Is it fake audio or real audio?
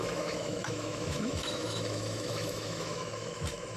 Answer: fake